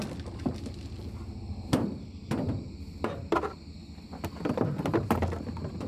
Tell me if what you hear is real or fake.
real